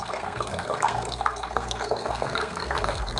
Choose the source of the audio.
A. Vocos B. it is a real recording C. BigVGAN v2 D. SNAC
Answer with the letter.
D